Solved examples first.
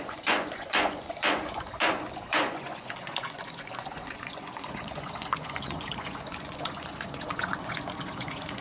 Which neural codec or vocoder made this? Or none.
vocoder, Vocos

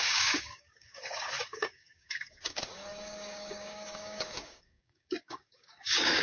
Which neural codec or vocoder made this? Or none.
codec, DAC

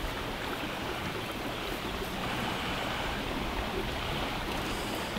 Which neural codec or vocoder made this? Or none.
none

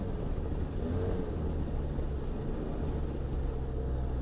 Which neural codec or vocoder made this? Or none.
none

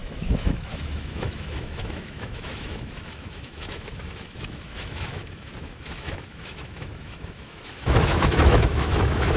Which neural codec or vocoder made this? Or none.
autoencoder, DAC-VAE